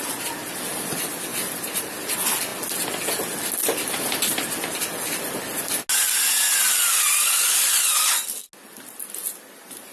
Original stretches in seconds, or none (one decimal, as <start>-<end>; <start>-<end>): 0.0-1.3; 2.1-9.9